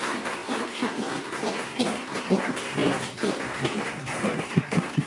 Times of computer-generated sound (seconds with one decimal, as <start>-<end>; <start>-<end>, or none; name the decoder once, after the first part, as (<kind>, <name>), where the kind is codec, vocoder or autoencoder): 0.0-5.1 (codec, SNAC)